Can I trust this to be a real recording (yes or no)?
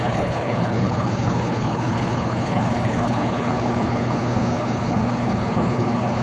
no